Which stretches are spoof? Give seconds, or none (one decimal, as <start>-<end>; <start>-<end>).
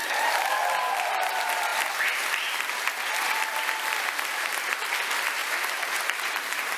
0.0-0.5; 5.4-6.8